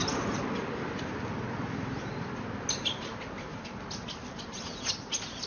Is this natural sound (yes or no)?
yes